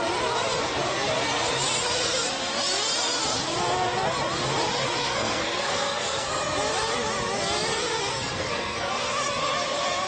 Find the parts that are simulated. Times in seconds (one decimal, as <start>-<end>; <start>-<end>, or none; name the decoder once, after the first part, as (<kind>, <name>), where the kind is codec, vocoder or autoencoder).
5.0-6.4 (codec, SNAC); 8.1-8.9